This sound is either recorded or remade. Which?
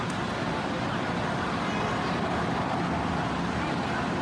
recorded